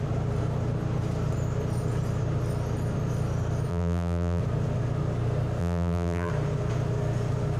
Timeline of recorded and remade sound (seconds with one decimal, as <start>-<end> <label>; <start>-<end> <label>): 0.0-3.7 recorded; 3.7-4.4 remade; 4.4-5.6 recorded; 5.6-6.3 remade; 6.3-7.6 recorded